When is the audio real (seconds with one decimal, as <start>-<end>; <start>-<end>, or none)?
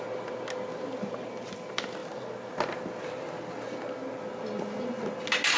0.0-5.6